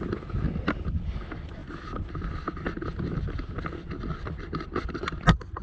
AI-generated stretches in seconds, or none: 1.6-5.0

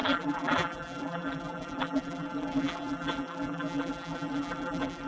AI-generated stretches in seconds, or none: 0.0-5.1

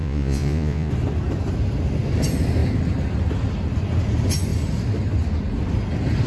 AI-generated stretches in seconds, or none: 0.0-0.9

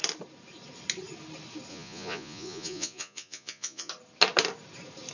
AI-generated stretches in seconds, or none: 1.7-3.9

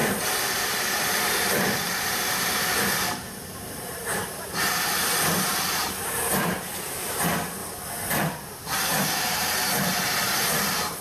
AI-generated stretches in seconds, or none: 0.0-7.6; 8.1-11.0

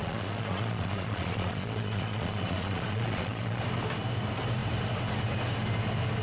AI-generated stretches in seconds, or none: 0.0-3.6